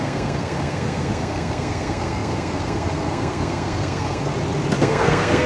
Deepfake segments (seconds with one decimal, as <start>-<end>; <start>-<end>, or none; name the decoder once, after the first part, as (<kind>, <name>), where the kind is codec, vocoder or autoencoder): 0.0-4.3 (codec, SNAC); 4.8-5.5